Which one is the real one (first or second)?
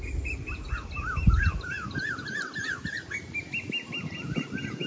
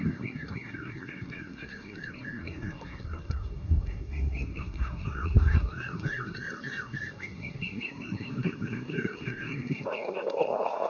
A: first